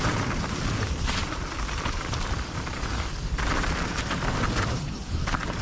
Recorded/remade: remade